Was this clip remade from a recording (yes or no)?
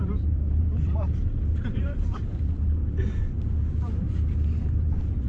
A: yes